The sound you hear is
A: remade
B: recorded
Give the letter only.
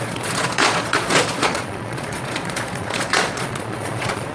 A